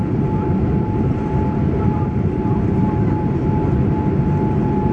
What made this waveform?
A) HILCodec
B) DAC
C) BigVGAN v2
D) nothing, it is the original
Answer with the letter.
C